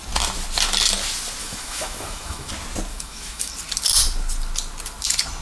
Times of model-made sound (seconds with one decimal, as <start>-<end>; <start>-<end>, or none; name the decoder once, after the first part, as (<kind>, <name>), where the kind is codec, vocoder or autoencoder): 1.4-2.5 (autoencoder, DAC-VAE); 2.9-3.5